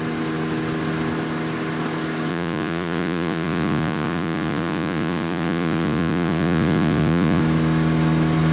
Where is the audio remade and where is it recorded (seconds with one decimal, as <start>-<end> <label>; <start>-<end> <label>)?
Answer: 0.0-2.3 recorded; 2.3-7.4 remade; 7.4-8.5 recorded